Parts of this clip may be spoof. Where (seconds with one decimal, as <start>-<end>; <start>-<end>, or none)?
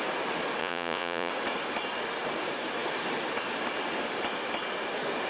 0.6-1.3